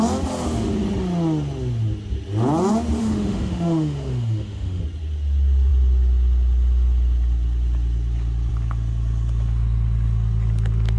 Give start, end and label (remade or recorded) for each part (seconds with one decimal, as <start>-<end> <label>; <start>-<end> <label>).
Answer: 0.0-3.0 recorded; 3.0-4.8 remade; 4.8-11.0 recorded